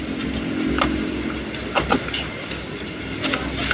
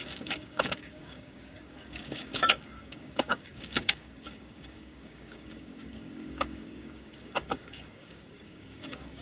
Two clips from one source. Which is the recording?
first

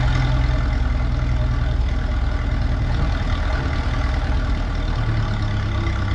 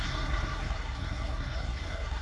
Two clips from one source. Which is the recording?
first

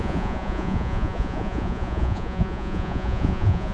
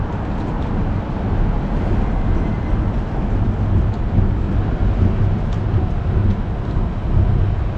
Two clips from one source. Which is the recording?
second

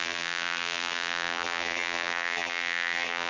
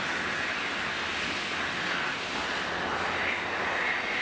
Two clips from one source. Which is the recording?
second